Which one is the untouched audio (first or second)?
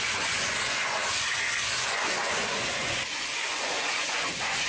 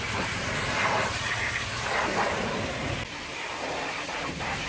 second